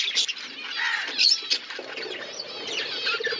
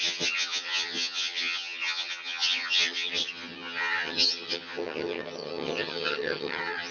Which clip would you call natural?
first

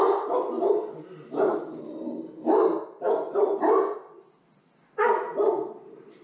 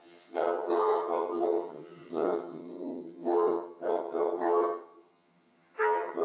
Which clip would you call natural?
first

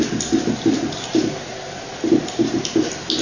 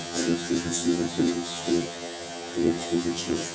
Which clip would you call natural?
first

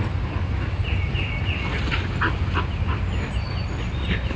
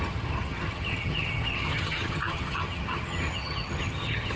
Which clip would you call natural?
first